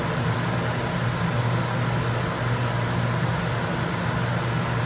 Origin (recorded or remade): recorded